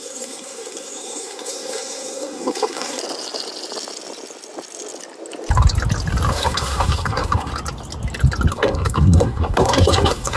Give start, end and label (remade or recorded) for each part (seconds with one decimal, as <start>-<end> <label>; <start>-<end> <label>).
0.0-3.0 remade; 3.0-6.3 recorded; 6.3-7.5 remade; 7.5-8.5 recorded; 8.5-10.4 remade